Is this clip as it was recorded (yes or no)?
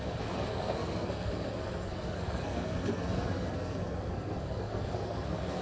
no